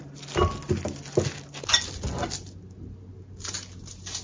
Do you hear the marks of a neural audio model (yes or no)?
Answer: no